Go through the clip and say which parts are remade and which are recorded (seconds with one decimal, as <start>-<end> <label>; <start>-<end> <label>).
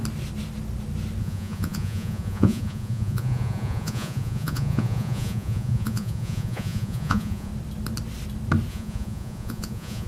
0.0-1.2 recorded; 1.2-7.5 remade; 7.5-8.7 recorded; 8.7-10.1 remade